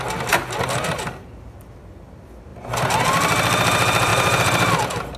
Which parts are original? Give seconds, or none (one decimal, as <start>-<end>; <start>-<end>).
0.0-4.1; 4.7-5.2